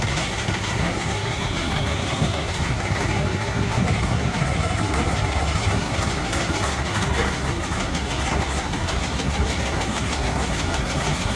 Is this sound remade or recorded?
remade